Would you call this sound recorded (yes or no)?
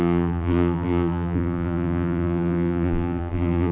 no